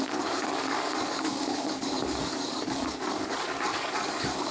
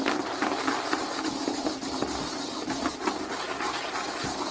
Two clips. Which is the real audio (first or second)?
second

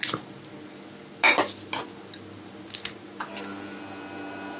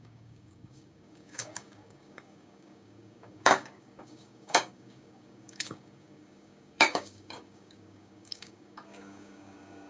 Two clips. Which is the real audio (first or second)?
first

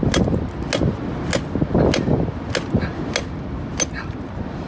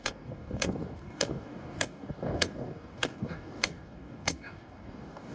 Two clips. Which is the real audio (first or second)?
first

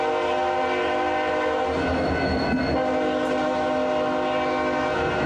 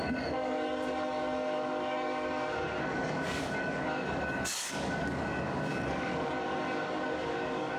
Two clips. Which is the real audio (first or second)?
first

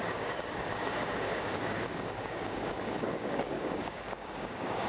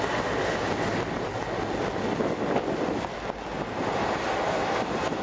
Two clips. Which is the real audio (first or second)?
second